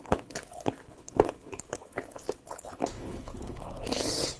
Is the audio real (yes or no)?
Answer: no